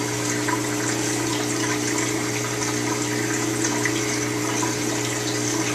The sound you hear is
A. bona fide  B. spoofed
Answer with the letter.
A